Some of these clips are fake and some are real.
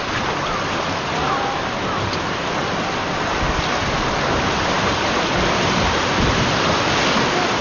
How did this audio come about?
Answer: real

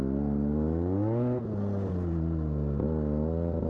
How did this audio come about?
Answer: real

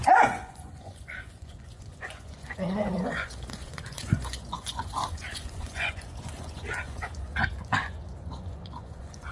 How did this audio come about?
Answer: fake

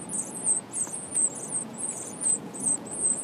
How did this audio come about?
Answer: fake